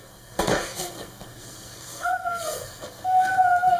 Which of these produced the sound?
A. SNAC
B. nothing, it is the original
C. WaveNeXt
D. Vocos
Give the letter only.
A